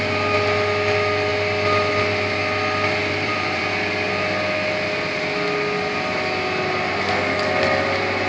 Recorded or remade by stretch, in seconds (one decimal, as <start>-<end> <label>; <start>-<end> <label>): 0.0-3.0 recorded; 3.0-3.6 remade; 3.6-8.3 recorded